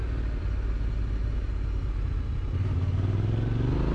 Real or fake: real